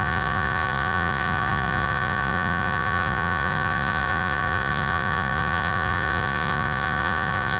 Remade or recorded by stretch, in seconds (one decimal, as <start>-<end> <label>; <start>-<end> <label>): 0.0-7.6 remade